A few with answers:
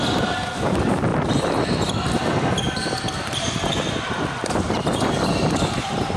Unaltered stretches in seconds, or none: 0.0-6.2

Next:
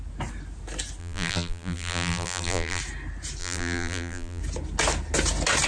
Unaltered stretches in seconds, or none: 0.0-1.0; 2.8-3.4; 4.4-5.7

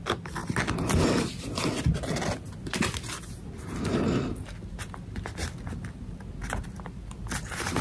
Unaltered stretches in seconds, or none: 0.0-7.8

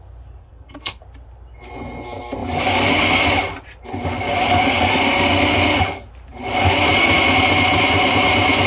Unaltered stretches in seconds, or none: 0.0-0.4; 1.0-8.7